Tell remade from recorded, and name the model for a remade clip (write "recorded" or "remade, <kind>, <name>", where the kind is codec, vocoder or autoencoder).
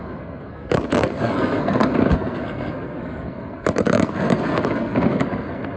remade, codec, SNAC